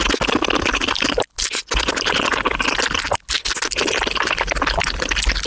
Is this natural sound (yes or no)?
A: yes